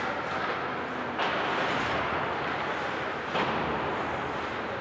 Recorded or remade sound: recorded